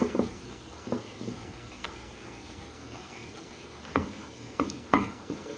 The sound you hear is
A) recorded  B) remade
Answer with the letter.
B